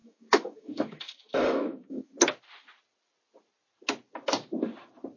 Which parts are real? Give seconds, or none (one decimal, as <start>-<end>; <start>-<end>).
2.1-5.2